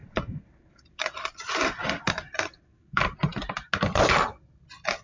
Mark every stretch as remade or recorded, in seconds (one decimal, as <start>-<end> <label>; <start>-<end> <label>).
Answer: 0.0-3.0 remade; 3.0-5.0 recorded